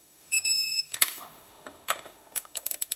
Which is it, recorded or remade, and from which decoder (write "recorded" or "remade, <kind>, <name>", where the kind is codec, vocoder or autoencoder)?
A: remade, autoencoder, DAC-VAE